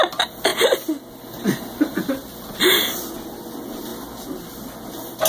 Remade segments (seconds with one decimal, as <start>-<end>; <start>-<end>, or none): none

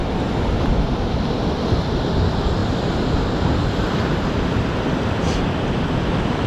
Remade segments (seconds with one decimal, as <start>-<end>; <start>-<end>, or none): 1.7-2.6; 3.4-6.5

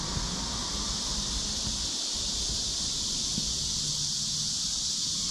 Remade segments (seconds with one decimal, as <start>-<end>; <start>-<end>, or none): 0.6-3.8

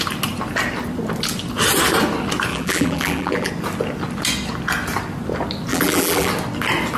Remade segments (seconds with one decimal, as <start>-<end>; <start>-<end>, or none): 2.5-3.5; 5.7-6.3

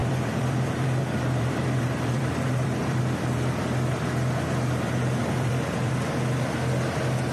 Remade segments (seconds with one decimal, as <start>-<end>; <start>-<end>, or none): 0.0-3.0; 5.2-5.9

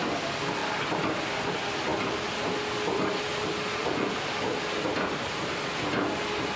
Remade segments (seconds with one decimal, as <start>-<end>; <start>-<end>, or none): none

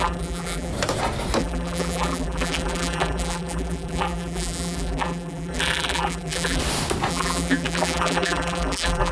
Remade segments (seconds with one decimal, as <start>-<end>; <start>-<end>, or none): 0.0-0.7; 1.4-6.6; 7.1-9.1